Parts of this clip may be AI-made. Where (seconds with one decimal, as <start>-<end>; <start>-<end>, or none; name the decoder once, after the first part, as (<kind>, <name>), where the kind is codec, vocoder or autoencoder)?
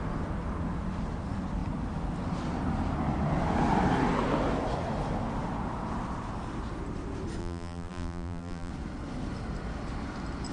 7.4-8.7 (vocoder, BigVGAN v2)